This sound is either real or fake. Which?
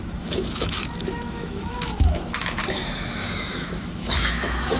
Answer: fake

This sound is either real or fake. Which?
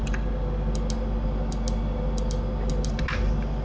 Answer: real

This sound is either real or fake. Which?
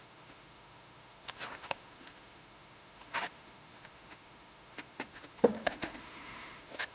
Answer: fake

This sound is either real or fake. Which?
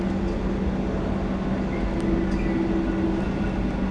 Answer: real